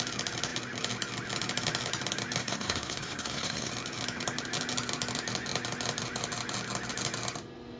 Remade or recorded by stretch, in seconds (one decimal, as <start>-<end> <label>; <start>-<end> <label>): 0.0-2.4 recorded; 2.4-3.7 remade; 3.7-7.8 recorded